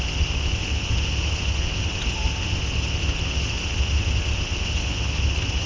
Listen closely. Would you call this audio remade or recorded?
remade